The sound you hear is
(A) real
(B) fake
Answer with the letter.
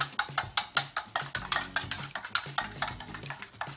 A